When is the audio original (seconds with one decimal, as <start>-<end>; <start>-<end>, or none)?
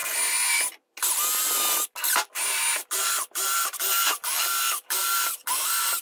0.0-4.2; 5.6-6.0